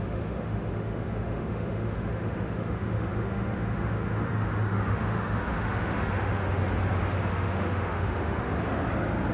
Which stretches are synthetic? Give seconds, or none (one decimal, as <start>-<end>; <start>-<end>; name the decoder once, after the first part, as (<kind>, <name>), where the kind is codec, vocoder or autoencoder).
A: 0.0-6.6 (autoencoder, DAC-VAE); 7.3-8.5